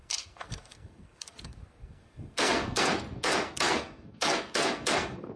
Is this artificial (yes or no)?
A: yes